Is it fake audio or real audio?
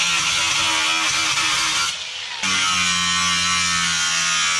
real